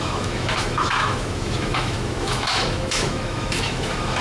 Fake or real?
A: fake